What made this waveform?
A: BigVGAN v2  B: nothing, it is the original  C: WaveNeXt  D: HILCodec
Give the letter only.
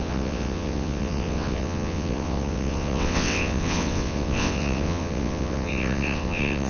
C